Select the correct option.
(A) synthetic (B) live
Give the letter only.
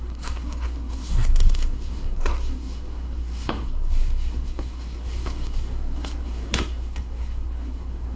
A